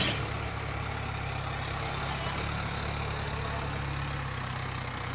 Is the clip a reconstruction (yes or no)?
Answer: no